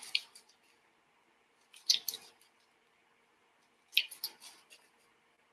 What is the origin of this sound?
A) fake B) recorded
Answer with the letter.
B